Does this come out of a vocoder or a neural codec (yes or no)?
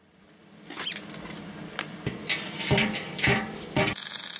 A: no